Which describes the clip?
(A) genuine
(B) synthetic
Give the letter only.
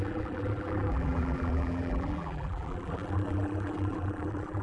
B